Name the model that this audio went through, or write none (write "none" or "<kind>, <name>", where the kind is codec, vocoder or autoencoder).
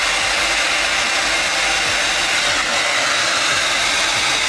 none